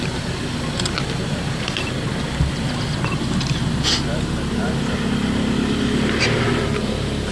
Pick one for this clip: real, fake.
real